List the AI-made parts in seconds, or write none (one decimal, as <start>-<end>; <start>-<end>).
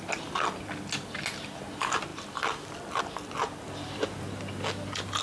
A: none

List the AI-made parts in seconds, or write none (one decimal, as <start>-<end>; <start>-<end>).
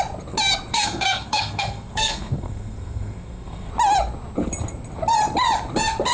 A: 0.7-3.7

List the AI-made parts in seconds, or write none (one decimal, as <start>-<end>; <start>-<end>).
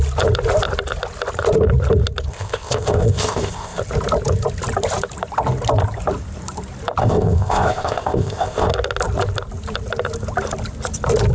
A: 2.3-3.8; 7.0-8.7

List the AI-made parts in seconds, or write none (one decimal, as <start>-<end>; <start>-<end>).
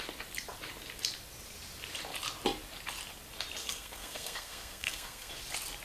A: 3.6-5.3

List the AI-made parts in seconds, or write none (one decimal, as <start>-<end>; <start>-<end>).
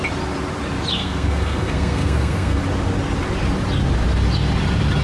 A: 1.0-2.6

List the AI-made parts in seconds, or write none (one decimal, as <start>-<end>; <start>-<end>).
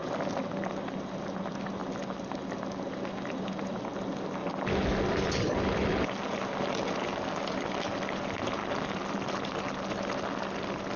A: none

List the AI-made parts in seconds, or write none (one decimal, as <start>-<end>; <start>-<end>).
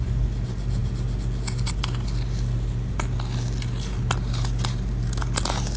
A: none